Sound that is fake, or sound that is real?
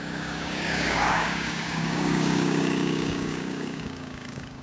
fake